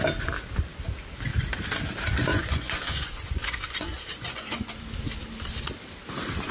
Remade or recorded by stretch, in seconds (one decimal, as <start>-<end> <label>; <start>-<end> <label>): 0.0-2.3 recorded; 2.3-4.8 remade; 4.8-6.5 recorded